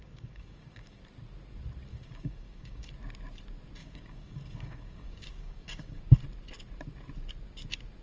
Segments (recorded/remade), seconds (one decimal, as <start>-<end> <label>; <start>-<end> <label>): 0.0-1.0 remade; 1.0-1.9 recorded; 1.9-2.9 remade; 2.9-3.8 recorded; 3.8-6.0 remade; 6.0-8.0 recorded

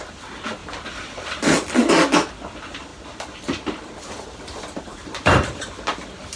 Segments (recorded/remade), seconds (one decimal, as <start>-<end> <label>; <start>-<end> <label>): 0.0-4.9 recorded; 4.9-5.5 remade; 5.5-6.4 recorded

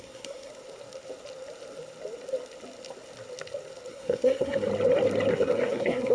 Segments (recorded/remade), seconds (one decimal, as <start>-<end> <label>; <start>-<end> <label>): 0.0-0.5 remade; 0.5-3.9 recorded; 3.9-4.7 remade; 4.7-5.3 recorded; 5.3-6.1 remade

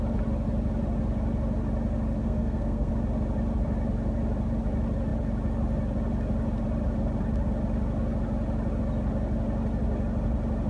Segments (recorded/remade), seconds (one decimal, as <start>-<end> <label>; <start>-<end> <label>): 0.0-2.2 recorded; 2.2-2.9 remade; 2.9-10.7 recorded

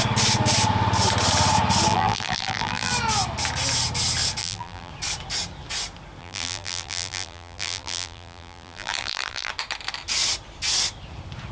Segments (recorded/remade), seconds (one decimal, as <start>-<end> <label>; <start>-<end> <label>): 0.0-1.9 recorded; 1.9-2.9 remade; 2.9-4.4 recorded; 4.4-4.9 remade; 4.9-6.2 recorded; 6.2-9.5 remade; 9.5-11.5 recorded

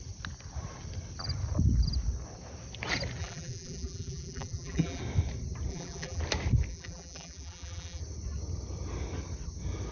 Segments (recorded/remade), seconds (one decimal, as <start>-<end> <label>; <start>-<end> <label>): 0.0-3.2 recorded; 3.2-5.0 remade; 5.0-5.7 recorded; 5.7-6.2 remade; 6.2-6.7 recorded; 6.7-8.0 remade; 8.0-9.9 recorded